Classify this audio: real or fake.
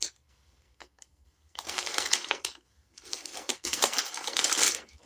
fake